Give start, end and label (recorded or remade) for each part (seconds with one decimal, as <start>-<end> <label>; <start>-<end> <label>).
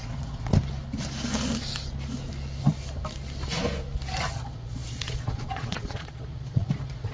0.0-0.5 remade; 0.5-4.3 recorded; 4.3-7.1 remade